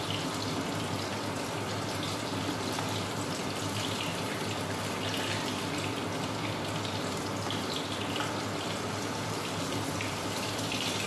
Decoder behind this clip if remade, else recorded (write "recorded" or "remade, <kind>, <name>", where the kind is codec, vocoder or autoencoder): recorded